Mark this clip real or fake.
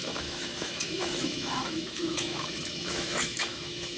fake